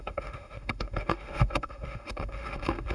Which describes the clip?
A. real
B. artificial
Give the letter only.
B